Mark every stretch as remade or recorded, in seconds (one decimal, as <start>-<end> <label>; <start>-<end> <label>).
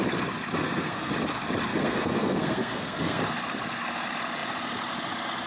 0.0-0.6 recorded; 0.6-1.1 remade; 1.1-1.7 recorded; 1.7-3.2 remade; 3.2-5.5 recorded